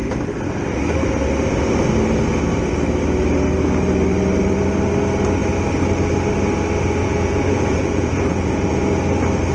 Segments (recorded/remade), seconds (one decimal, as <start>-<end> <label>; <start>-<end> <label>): 0.0-7.0 recorded; 7.0-8.8 remade; 8.8-9.5 recorded